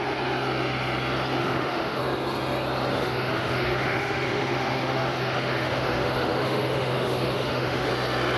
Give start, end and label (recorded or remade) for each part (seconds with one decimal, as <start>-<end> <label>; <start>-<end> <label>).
0.0-1.4 recorded; 1.4-2.0 remade; 2.0-2.9 recorded; 2.9-7.9 remade; 7.9-8.4 recorded